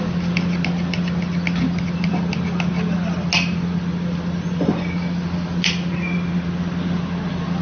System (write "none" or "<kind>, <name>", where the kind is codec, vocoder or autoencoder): none